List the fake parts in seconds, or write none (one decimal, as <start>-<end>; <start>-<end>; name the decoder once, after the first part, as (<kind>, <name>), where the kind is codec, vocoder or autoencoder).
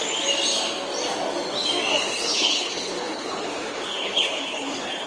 1.9-5.1 (codec, HILCodec)